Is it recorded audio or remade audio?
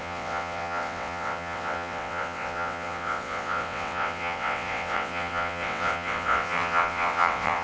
remade